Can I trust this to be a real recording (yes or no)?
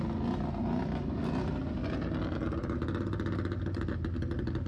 yes